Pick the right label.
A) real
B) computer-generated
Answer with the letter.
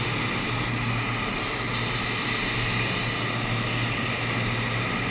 A